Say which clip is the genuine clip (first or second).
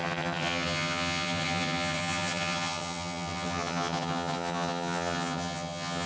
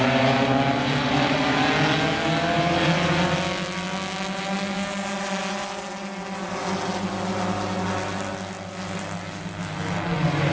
second